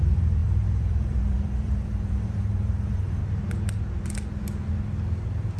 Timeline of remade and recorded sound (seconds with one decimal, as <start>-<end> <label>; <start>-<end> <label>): 0.0-3.2 remade; 3.2-5.6 recorded